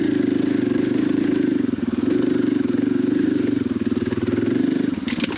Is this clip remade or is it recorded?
remade